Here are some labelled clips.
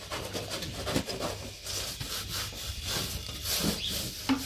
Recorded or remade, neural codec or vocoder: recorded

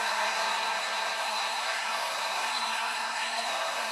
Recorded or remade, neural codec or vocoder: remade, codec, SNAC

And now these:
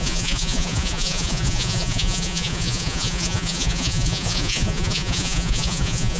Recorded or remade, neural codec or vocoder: remade, vocoder, Vocos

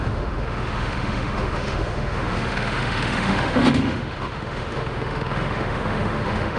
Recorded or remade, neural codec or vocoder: remade, autoencoder, DAC-VAE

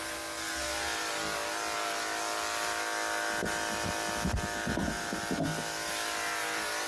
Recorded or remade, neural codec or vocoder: recorded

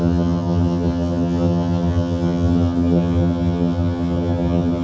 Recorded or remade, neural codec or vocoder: remade, vocoder, HiFi-GAN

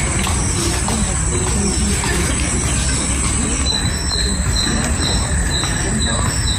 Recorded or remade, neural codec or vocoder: recorded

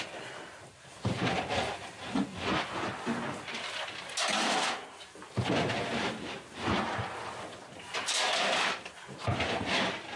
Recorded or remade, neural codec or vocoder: recorded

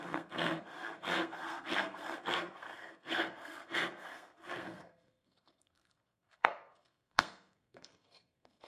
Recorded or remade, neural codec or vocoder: remade, codec, SNAC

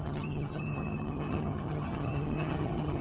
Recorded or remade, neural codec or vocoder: remade, vocoder, HiFi-GAN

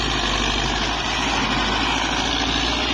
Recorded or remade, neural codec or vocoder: recorded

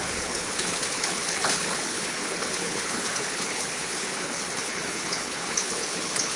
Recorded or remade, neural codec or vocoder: remade, codec, HILCodec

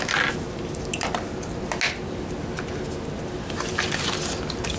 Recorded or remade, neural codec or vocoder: recorded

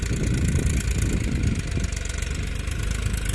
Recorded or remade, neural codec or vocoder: recorded